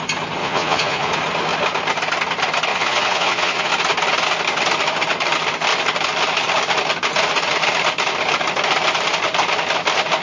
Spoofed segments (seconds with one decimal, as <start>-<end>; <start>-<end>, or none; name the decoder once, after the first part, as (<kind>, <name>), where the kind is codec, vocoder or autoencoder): 0.4-1.1 (vocoder, Vocos); 2.7-3.7